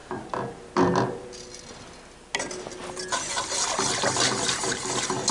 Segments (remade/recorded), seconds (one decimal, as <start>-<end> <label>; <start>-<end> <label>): 0.0-5.3 recorded